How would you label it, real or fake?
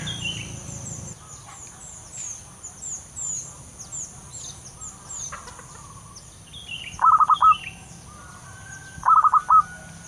real